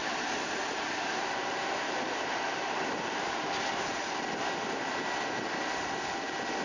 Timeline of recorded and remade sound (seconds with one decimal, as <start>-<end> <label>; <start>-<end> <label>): 0.0-4.0 remade; 4.0-6.6 recorded